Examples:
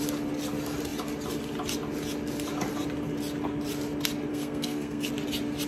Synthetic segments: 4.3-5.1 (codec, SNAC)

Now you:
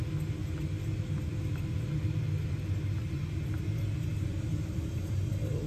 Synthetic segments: none

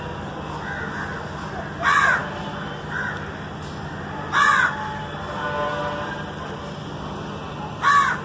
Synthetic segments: none

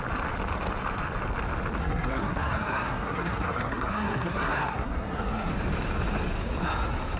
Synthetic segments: 1.8-5.5 (codec, SNAC)

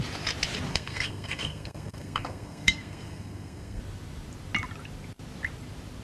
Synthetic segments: 0.7-3.8 (codec, SNAC)

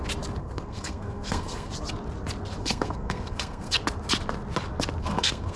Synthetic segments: 0.4-1.7 (codec, SNAC); 2.6-3.8; 5.0-5.6

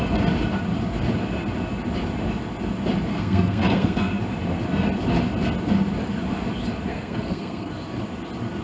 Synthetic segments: 3.1-4.2 (codec, SNAC); 6.9-7.7

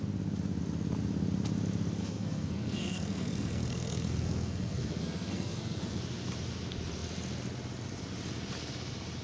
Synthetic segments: 2.0-6.0 (codec, SNAC)